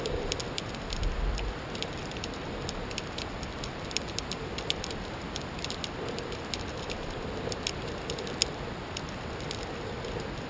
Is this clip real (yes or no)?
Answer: yes